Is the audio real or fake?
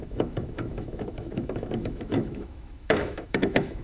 fake